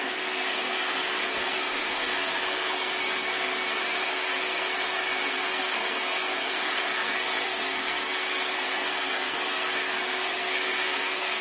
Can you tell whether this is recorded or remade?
remade